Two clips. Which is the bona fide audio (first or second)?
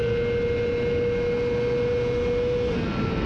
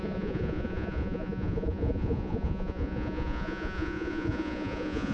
first